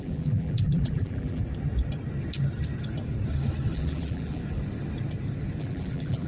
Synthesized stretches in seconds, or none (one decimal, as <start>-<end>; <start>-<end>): 0.0-1.4; 3.7-4.4; 5.6-6.3